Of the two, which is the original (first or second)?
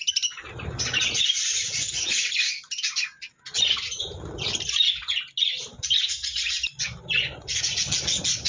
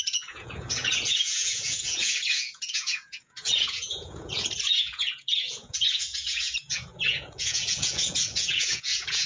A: first